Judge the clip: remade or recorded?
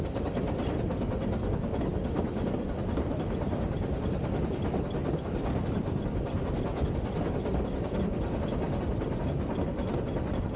remade